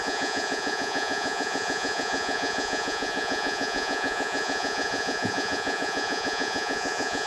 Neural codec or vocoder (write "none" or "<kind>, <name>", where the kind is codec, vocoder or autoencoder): vocoder, Vocos